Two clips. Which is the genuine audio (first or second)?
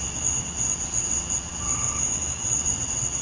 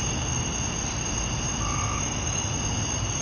second